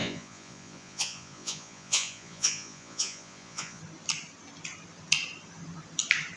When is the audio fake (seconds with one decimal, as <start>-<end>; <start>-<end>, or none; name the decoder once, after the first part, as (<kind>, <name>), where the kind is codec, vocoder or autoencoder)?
0.0-3.8 (vocoder, Vocos)